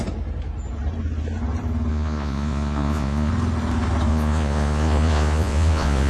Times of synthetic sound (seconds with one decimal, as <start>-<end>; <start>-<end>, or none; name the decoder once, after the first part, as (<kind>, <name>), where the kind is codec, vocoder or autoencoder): 1.9-3.3 (vocoder, Vocos); 4.1-6.1